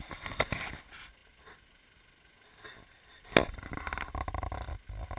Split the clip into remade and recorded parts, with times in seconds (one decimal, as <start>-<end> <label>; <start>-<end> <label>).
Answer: 0.0-5.2 recorded